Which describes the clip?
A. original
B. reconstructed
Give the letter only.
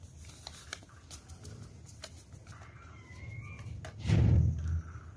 A